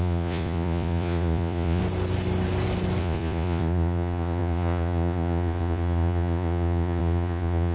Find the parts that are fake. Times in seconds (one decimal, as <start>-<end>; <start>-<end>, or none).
0.0-1.8; 3.0-7.7